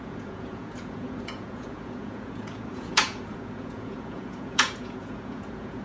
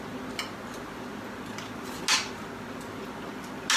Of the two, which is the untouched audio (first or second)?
second